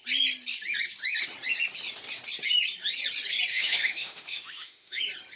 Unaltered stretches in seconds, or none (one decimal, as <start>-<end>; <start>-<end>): 0.0-3.5; 5.0-5.4